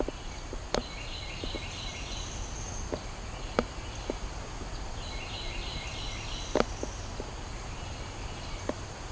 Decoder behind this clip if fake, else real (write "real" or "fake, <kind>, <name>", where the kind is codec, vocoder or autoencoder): real